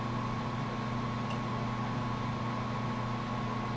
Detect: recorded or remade recorded